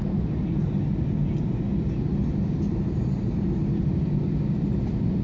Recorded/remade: recorded